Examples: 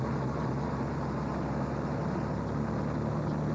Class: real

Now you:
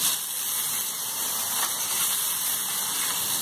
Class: real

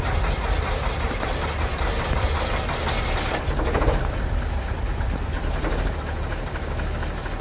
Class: real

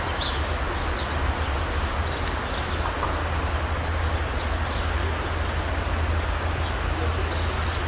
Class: real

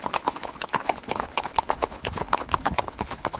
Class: fake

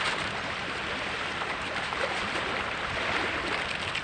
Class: real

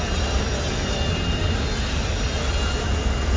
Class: real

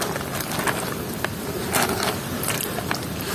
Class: real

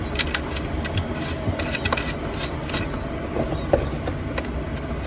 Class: real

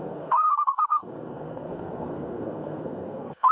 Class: fake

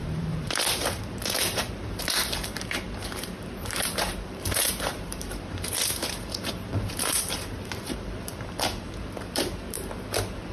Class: fake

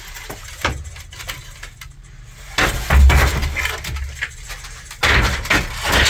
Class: real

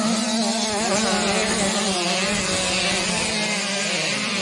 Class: real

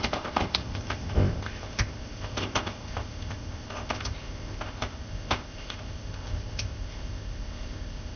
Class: fake